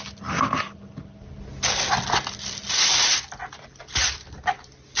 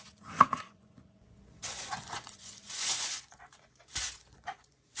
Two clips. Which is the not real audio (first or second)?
second